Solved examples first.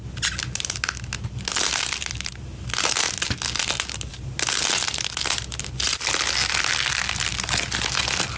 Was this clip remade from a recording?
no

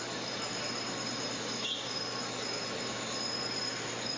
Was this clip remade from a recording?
no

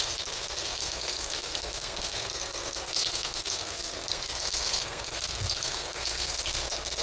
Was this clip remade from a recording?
yes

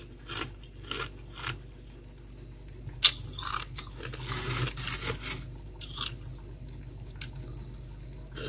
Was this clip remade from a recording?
no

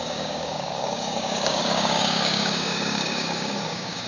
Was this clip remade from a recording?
yes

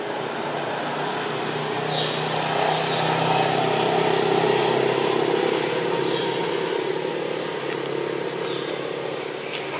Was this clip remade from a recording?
no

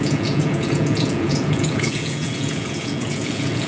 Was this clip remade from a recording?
yes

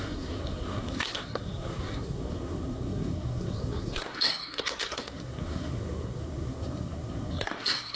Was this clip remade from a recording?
yes